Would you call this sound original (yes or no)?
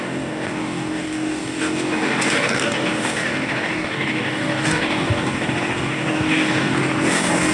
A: no